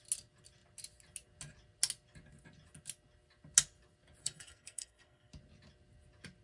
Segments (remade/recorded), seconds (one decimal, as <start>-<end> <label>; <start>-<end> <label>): 0.0-4.2 recorded; 4.2-5.3 remade; 5.3-6.4 recorded